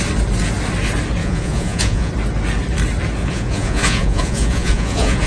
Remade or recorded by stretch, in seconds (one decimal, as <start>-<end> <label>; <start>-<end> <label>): 0.0-1.2 recorded; 1.2-2.1 remade; 2.1-3.2 recorded; 3.2-5.3 remade